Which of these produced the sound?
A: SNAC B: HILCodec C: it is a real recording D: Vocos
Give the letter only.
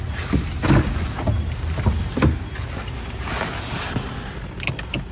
C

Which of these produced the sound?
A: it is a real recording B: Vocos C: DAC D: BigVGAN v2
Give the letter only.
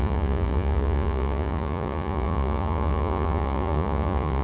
B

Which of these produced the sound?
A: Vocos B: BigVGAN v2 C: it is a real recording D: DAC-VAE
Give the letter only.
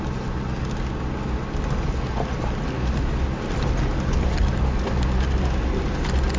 C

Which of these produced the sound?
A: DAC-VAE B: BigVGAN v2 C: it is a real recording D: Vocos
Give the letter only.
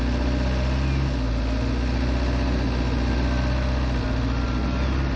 C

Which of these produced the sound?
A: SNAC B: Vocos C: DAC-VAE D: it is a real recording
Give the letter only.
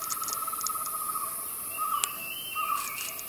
D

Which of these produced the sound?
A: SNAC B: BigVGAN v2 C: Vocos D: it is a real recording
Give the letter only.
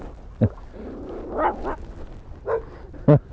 D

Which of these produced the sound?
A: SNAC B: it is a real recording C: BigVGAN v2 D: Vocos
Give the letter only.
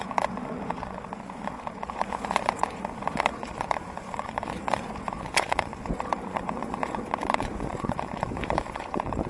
D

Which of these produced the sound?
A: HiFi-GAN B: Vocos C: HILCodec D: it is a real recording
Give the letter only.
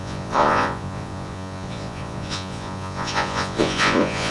B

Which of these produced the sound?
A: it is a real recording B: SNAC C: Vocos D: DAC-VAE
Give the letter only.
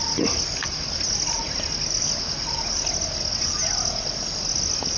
A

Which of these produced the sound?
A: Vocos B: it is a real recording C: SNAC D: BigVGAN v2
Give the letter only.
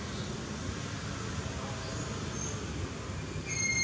B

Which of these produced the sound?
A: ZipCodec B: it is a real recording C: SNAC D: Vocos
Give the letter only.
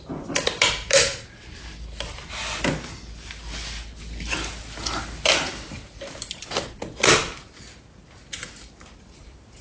B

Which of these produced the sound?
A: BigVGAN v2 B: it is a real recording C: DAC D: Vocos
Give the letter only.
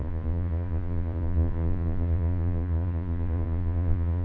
D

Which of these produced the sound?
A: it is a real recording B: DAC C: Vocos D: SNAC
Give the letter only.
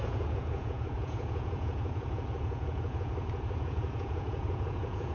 C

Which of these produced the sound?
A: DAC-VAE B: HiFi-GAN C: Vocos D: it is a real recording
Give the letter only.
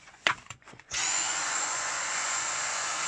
C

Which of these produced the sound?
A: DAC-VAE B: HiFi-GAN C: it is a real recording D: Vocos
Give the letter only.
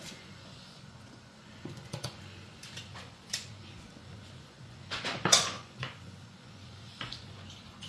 D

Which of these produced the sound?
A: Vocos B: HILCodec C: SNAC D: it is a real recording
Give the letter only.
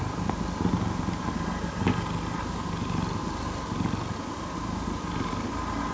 D